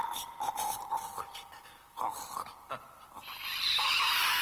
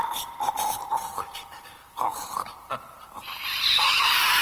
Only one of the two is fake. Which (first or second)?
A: second